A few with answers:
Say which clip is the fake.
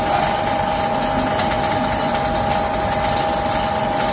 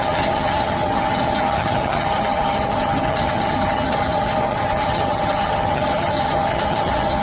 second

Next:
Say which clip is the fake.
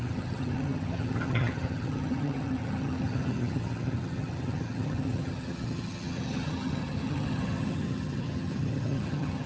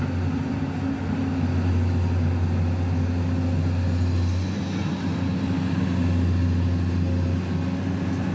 first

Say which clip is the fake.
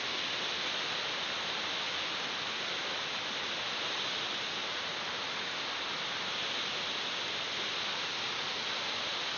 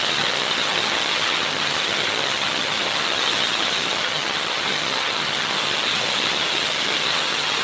second